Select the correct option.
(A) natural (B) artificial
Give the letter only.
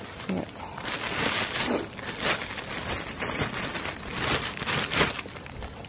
A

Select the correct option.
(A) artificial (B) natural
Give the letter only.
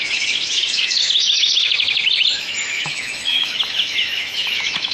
A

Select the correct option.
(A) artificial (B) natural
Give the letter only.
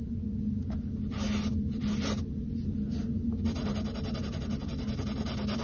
B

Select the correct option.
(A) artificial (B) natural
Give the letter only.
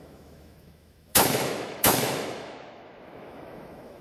A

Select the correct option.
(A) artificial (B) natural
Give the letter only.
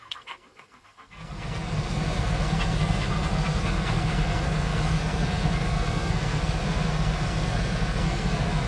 A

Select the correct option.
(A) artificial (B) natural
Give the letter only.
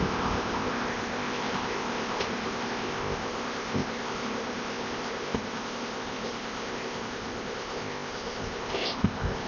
A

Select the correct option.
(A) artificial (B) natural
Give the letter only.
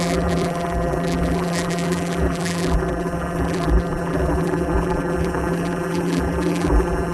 A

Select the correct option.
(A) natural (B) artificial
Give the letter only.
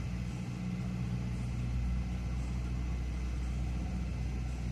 A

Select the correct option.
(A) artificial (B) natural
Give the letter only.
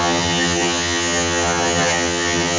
A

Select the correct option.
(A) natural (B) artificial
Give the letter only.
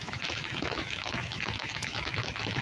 B